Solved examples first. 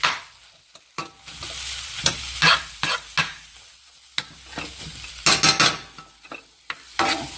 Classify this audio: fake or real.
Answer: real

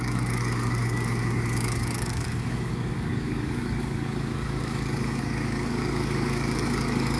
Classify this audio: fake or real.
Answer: fake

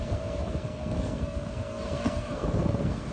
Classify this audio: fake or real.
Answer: fake